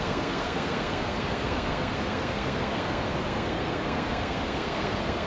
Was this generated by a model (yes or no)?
yes